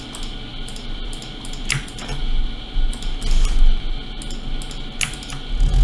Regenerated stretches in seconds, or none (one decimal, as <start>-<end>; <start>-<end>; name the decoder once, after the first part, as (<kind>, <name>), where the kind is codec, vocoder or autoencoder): 0.5-2.2 (vocoder, BigVGAN v2)